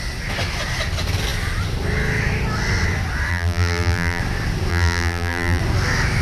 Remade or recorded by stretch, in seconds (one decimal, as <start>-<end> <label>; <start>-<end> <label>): 0.0-3.3 recorded; 3.3-4.2 remade; 4.2-4.7 recorded; 4.7-5.6 remade; 5.6-6.2 recorded